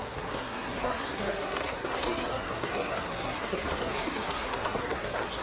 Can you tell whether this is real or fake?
fake